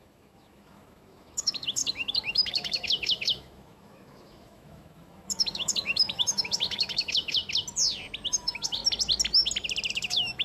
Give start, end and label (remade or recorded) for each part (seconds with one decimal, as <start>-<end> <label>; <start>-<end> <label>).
0.0-7.4 remade; 7.4-8.3 recorded; 8.3-8.8 remade; 8.8-9.9 recorded; 9.9-10.4 remade